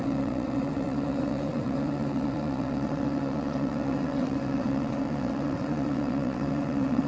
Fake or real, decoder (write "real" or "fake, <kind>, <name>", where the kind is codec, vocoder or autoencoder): fake, vocoder, WaveNeXt